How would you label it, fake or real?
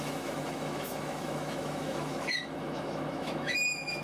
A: fake